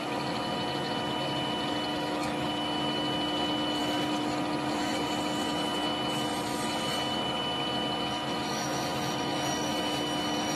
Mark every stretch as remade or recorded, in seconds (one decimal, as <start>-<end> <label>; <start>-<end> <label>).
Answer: 0.0-1.9 recorded; 1.9-2.5 remade; 2.5-10.6 recorded